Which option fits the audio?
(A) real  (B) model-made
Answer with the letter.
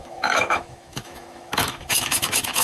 B